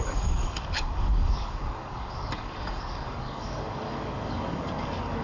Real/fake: fake